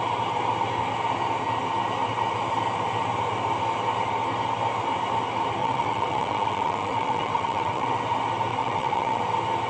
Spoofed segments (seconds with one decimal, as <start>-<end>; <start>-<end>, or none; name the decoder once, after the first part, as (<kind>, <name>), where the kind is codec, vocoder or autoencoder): 5.6-8.0 (vocoder, WaveNeXt); 8.5-9.2